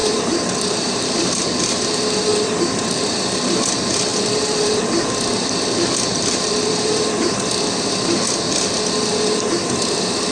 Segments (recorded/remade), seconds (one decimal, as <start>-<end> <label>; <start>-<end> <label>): 0.0-1.3 remade; 1.3-2.3 recorded; 2.3-3.6 remade; 3.6-4.1 recorded; 4.1-5.1 remade; 5.1-6.1 recorded; 6.1-7.5 remade; 7.5-10.3 recorded